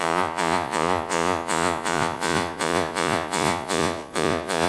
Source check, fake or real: fake